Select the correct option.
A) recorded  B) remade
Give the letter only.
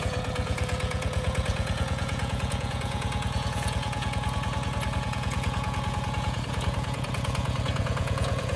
B